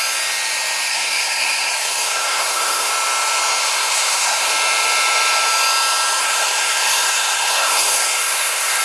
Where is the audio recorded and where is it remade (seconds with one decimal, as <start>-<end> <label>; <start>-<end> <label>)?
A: 0.0-0.9 recorded; 0.9-2.9 remade; 2.9-3.6 recorded; 3.6-4.5 remade; 4.5-6.2 recorded; 6.2-8.8 remade